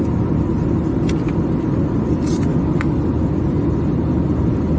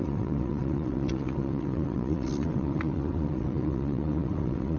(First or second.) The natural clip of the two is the first